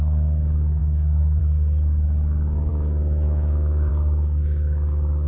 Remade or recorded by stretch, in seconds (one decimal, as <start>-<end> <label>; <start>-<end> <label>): 0.0-0.8 recorded; 0.8-1.4 remade; 1.4-2.7 recorded; 2.7-3.9 remade; 3.9-5.3 recorded